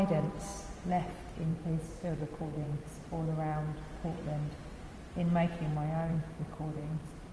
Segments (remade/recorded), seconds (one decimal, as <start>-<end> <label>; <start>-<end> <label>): 0.0-0.5 remade; 0.5-1.3 recorded; 1.3-2.8 remade; 2.8-6.1 recorded; 6.1-7.3 remade